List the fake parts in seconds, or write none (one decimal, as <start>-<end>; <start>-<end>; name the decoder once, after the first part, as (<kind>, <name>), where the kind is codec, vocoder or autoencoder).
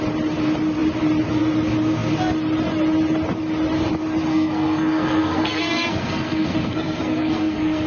4.3-7.9 (codec, SNAC)